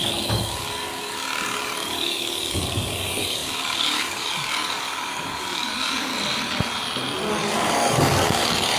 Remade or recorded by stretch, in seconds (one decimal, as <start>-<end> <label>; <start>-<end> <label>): 0.0-6.1 remade; 6.1-7.3 recorded; 7.3-8.8 remade